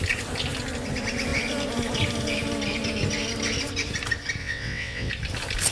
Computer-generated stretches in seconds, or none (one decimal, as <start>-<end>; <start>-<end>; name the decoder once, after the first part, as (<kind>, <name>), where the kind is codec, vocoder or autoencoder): 4.4-5.1 (vocoder, WaveNeXt)